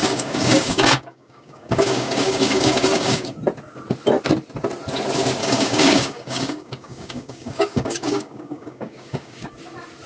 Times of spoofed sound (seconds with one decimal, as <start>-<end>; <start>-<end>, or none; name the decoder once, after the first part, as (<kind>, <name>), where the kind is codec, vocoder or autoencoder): 0.0-3.4 (codec, DAC); 5.4-9.5